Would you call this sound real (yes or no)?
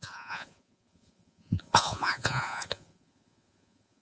no